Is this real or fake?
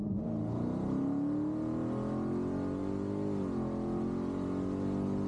real